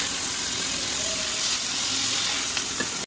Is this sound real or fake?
real